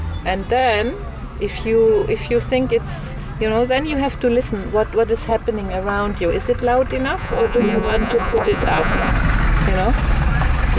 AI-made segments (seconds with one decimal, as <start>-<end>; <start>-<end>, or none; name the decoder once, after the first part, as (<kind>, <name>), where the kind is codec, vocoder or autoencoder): 7.2-9.1 (vocoder, Vocos)